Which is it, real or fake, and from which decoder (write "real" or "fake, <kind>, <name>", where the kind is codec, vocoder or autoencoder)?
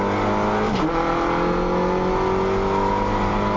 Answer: real